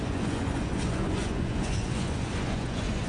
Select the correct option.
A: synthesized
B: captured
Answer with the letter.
A